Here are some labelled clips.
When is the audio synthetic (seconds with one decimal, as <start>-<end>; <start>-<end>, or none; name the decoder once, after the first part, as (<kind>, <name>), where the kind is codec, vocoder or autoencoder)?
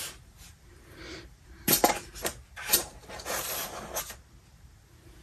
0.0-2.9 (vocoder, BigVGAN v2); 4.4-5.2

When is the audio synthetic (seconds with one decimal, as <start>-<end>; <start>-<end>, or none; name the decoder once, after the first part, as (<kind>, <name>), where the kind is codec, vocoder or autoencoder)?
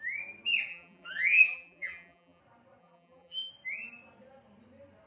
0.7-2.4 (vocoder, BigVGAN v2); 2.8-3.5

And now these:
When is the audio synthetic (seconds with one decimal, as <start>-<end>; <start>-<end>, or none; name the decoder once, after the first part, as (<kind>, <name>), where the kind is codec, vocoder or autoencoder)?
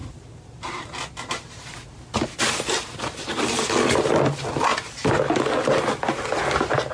4.7-5.3 (vocoder, BigVGAN v2)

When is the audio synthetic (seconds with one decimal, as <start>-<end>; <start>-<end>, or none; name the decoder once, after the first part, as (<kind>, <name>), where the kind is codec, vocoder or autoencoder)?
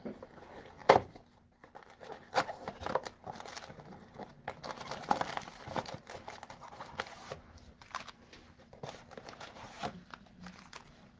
3.5-4.3 (vocoder, BigVGAN v2); 5.0-9.8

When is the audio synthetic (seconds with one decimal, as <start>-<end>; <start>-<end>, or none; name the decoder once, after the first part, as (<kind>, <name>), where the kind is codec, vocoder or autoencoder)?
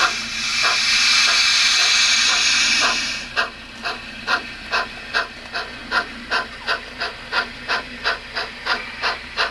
0.0-0.5 (vocoder, BigVGAN v2); 1.3-5.8; 6.7-9.5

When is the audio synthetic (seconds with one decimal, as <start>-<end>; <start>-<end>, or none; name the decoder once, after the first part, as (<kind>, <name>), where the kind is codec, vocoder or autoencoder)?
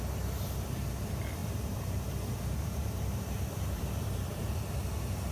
1.4-4.6 (vocoder, BigVGAN v2)